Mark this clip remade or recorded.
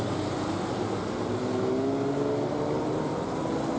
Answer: recorded